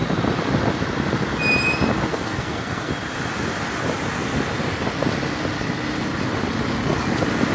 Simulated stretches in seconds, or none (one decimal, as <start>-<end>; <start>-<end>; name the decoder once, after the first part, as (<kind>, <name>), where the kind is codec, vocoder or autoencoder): 2.1-2.9 (codec, SNAC)